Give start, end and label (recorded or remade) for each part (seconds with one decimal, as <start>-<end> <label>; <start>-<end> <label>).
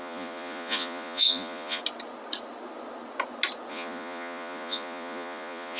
0.0-1.8 remade; 1.8-3.7 recorded; 3.7-5.8 remade